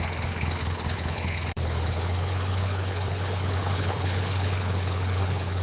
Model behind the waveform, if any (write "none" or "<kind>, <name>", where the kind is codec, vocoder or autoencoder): codec, HILCodec